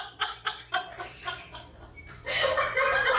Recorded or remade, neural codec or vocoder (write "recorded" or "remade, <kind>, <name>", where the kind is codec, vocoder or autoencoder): remade, vocoder, BigVGAN v2